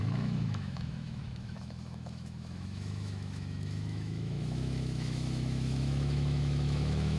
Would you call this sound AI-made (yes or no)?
yes